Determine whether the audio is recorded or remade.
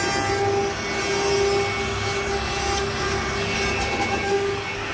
recorded